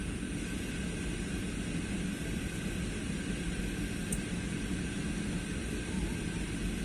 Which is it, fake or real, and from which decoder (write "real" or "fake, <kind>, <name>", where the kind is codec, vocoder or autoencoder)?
real